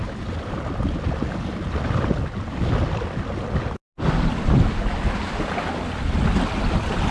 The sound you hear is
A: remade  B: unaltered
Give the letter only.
B